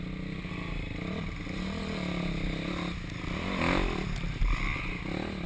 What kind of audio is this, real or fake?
real